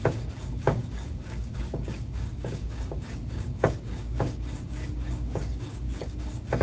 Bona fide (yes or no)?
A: no